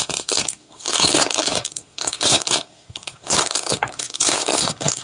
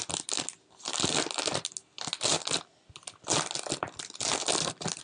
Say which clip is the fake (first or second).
first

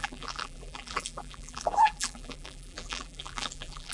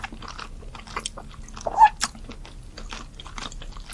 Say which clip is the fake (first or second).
first